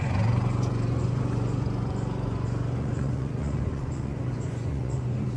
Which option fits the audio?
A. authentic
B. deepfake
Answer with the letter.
B